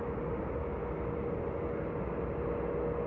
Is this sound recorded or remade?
recorded